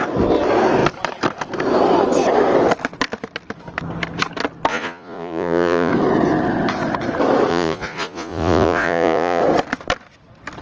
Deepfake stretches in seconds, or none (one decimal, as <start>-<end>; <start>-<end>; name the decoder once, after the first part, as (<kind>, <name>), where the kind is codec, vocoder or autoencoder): 4.7-5.9 (vocoder, Vocos); 7.5-9.4